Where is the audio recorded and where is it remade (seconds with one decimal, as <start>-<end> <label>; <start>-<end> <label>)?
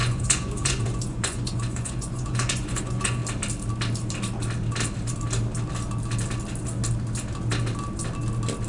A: 0.0-3.2 remade; 3.2-8.7 recorded